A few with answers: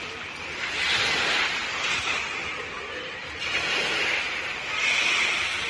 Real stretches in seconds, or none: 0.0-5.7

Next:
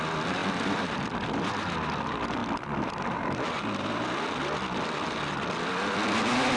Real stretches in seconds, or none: none

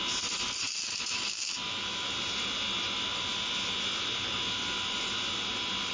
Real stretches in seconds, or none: 0.0-0.6; 1.6-5.9

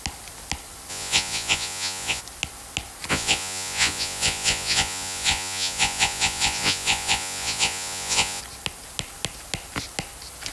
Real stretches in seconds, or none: 0.0-0.9; 2.2-3.1; 8.4-10.5

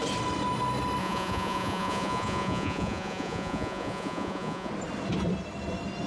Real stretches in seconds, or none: 0.0-1.0; 4.7-6.1